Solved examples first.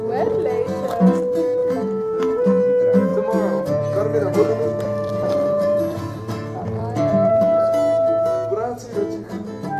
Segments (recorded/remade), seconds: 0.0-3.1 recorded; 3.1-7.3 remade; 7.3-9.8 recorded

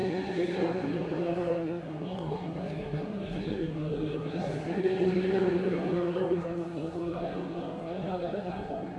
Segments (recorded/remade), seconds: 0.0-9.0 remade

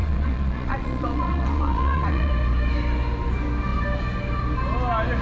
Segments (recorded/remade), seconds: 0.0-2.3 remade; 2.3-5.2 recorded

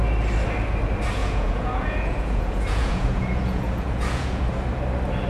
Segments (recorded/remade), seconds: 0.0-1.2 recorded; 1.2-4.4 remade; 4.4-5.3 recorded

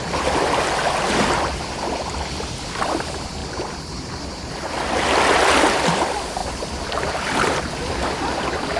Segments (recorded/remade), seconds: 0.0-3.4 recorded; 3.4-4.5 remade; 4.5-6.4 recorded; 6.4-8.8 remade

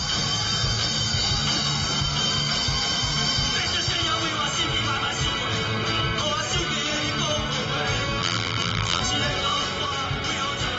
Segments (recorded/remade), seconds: 0.0-8.2 recorded; 8.2-9.0 remade; 9.0-10.8 recorded

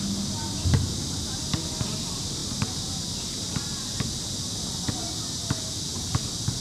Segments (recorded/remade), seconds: 0.0-6.6 recorded

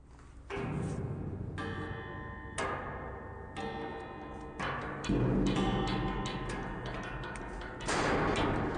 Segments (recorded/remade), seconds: 0.0-8.8 recorded